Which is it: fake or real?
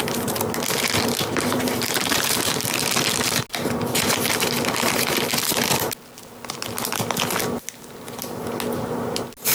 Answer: real